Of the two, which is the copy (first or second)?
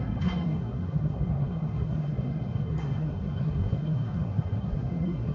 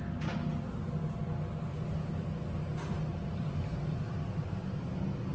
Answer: first